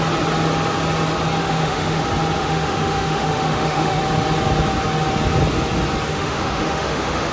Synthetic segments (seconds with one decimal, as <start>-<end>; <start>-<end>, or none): 1.4-2.0; 2.4-4.0; 6.1-7.3